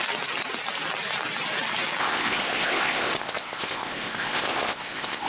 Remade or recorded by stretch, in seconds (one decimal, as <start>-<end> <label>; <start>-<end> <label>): 0.0-2.0 recorded; 2.0-5.3 remade